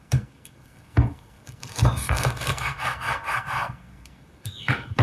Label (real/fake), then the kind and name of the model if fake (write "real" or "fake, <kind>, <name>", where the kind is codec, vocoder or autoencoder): fake, codec, SNAC